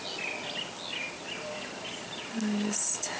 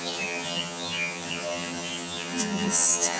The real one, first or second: first